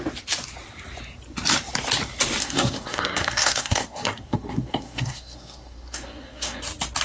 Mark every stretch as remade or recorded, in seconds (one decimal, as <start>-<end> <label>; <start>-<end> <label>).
0.0-2.4 recorded; 2.4-6.6 remade; 6.6-7.0 recorded